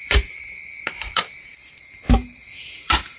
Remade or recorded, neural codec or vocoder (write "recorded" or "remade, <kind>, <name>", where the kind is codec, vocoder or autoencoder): remade, vocoder, BigVGAN v2